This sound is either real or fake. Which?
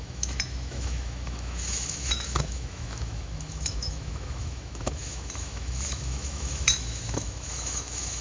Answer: fake